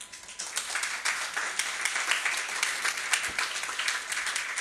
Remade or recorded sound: recorded